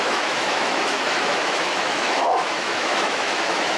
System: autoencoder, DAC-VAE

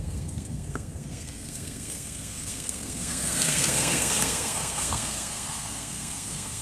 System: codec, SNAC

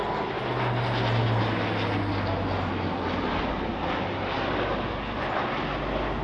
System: none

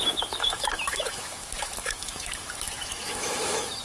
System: autoencoder, DAC-VAE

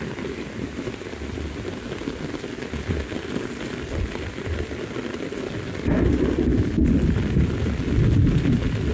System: none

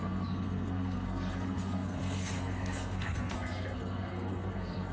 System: codec, SNAC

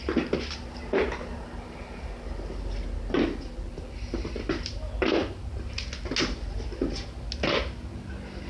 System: none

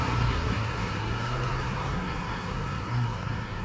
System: codec, SNAC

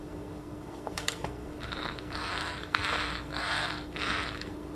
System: codec, SNAC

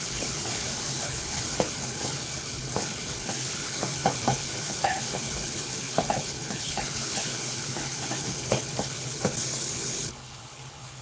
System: codec, HILCodec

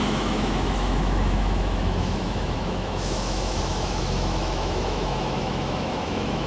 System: autoencoder, DAC-VAE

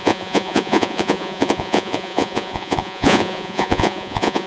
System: vocoder, Vocos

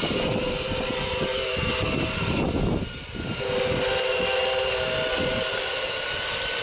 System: none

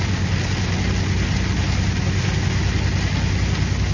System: none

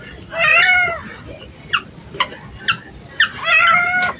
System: none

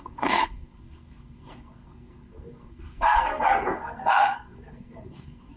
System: codec, SNAC